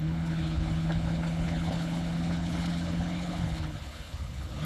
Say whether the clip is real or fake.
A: fake